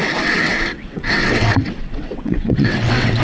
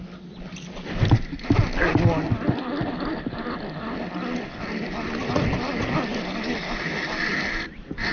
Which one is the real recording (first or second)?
second